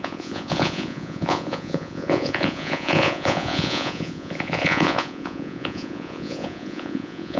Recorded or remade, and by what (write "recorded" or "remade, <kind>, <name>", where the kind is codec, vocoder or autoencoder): remade, vocoder, Vocos